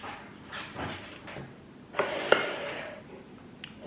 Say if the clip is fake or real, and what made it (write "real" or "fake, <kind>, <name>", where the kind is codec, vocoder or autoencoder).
real